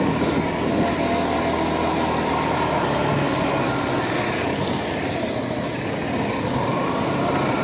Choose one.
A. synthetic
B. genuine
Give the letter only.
B